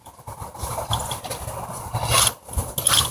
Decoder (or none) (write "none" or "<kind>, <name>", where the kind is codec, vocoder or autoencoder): none